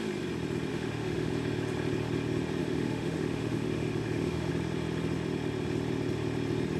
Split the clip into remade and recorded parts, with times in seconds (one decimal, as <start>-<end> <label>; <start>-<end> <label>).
0.0-0.7 recorded; 0.7-1.3 remade; 1.3-2.6 recorded; 2.6-4.5 remade; 4.5-6.8 recorded